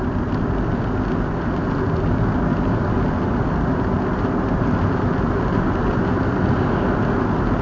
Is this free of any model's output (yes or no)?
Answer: yes